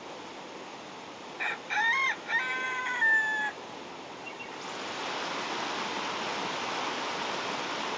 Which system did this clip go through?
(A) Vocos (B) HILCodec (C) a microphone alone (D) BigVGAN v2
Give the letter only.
C